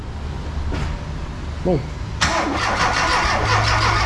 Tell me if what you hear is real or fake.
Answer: real